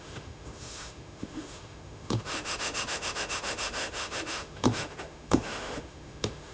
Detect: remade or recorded remade